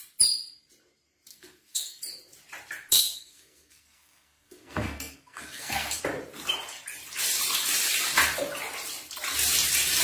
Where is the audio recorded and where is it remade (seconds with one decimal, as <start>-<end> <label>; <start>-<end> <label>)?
0.0-1.3 recorded; 1.3-2.0 remade; 2.0-2.9 recorded; 2.9-6.0 remade; 6.0-10.0 recorded